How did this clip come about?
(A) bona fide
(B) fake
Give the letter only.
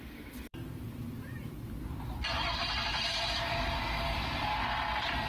B